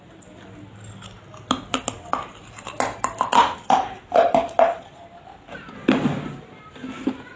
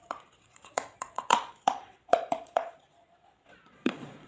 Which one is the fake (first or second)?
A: second